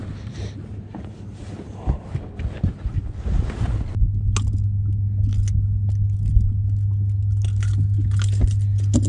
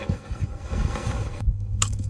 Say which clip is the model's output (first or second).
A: second